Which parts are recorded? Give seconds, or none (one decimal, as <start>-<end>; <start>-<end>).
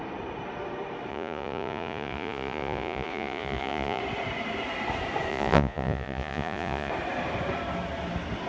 0.0-1.1; 4.0-5.3; 6.9-8.5